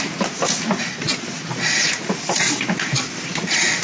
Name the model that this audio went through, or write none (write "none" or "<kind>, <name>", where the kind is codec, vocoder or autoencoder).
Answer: none